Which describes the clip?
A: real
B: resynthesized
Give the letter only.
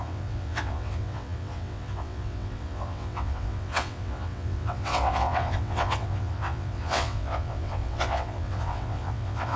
B